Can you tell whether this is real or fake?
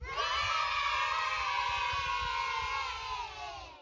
real